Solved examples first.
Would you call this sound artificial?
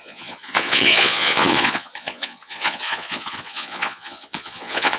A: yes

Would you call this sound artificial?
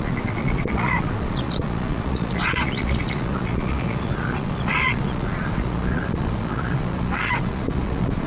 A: yes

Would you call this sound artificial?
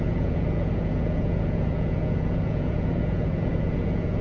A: yes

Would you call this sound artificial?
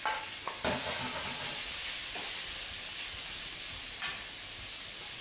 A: no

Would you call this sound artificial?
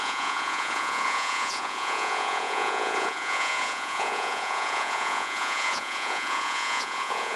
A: yes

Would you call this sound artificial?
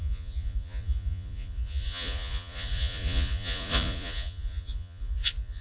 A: yes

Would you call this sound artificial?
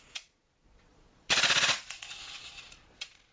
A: yes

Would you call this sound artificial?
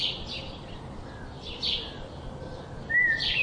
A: no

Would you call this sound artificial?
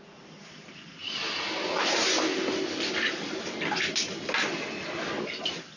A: no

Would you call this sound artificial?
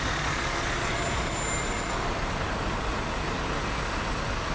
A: no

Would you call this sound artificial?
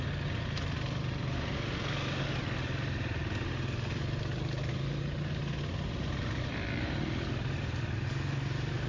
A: no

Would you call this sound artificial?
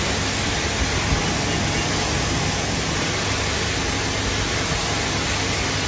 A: no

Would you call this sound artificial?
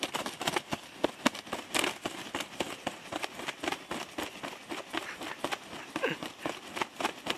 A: no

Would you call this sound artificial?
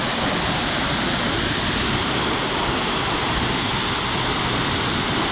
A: no